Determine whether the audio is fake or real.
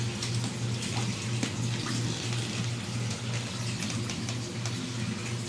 real